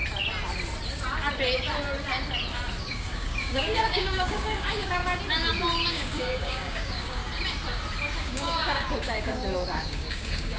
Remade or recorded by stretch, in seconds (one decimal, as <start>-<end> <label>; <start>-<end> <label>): 0.0-2.8 recorded; 2.8-5.0 remade; 5.0-5.9 recorded; 5.9-7.2 remade; 7.2-8.2 recorded; 8.2-10.6 remade

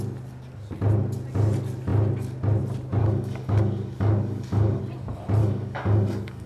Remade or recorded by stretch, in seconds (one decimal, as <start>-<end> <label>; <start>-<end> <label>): 0.0-3.0 recorded; 3.0-4.8 remade; 4.8-5.4 recorded; 5.4-6.5 remade

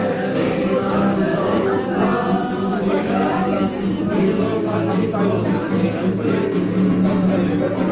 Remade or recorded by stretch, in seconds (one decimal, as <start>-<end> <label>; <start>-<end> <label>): 0.0-1.8 remade; 1.8-2.7 recorded; 2.7-3.7 remade; 3.7-7.9 recorded

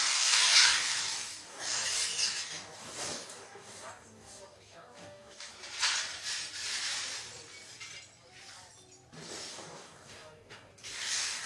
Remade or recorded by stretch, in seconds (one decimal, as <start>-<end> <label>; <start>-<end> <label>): 0.0-5.5 remade; 5.5-9.5 recorded; 9.5-11.5 remade